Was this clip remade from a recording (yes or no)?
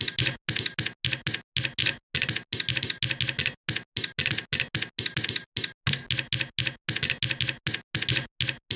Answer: no